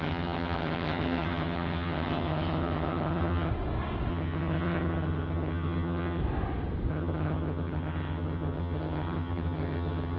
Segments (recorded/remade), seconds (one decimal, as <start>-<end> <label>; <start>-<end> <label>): 0.0-3.5 remade; 3.5-4.1 recorded; 4.1-6.2 remade; 6.2-6.9 recorded; 6.9-10.2 remade